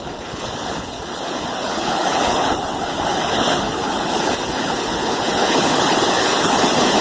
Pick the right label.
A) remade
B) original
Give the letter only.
A